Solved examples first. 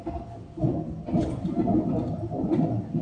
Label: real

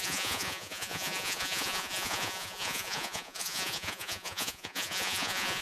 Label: fake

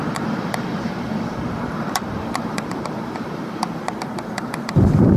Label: fake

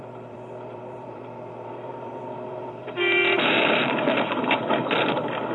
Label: fake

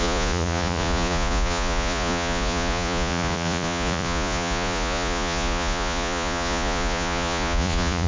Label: fake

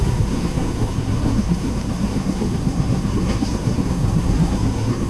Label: fake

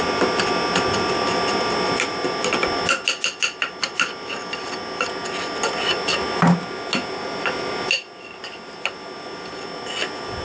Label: real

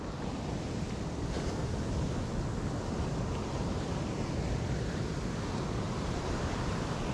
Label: real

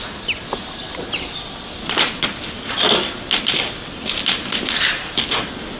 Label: real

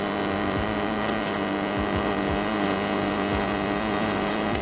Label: real